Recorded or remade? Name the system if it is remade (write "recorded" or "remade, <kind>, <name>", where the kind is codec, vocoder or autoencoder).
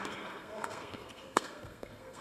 remade, codec, SNAC